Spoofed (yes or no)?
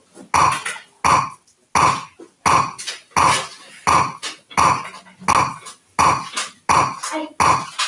no